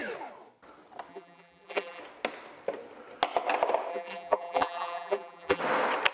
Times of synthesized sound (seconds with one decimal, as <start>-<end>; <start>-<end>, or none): 1.1-2.0; 3.9-5.6